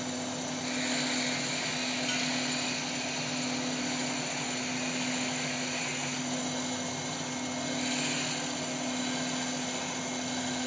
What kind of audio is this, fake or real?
real